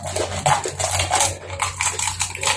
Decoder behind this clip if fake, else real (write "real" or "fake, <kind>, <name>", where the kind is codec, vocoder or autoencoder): real